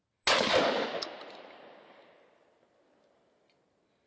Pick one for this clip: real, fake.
real